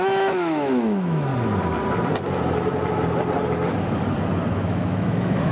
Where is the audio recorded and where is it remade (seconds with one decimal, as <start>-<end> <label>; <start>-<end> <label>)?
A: 0.0-1.3 remade; 1.3-4.6 recorded; 4.6-5.5 remade

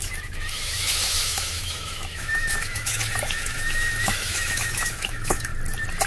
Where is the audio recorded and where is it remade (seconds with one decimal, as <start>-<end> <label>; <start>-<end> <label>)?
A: 0.0-5.5 remade; 5.5-6.1 recorded

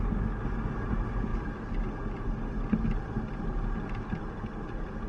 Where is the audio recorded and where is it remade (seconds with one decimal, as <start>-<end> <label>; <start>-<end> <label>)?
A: 0.0-5.1 recorded

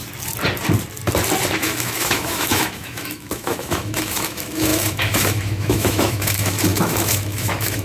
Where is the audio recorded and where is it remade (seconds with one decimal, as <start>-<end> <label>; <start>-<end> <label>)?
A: 0.0-1.6 recorded; 1.6-7.8 remade

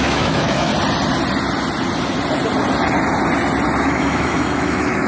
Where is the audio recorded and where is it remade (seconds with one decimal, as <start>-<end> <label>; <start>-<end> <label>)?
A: 0.0-0.7 remade; 0.7-3.8 recorded; 3.8-5.1 remade

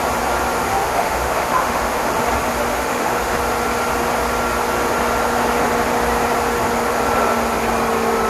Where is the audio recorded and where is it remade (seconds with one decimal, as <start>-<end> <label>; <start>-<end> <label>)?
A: 0.0-0.7 recorded; 0.7-2.1 remade; 2.1-2.7 recorded; 2.7-3.4 remade; 3.4-8.3 recorded

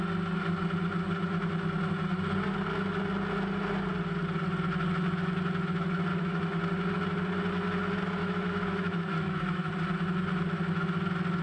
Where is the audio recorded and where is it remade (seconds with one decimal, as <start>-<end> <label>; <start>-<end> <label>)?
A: 0.0-6.1 recorded; 6.1-6.6 remade; 6.6-8.2 recorded; 8.2-9.7 remade; 9.7-11.4 recorded

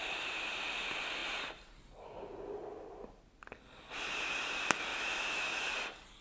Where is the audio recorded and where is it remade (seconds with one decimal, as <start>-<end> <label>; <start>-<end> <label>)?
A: 0.0-4.9 recorded; 4.9-5.7 remade; 5.7-6.2 recorded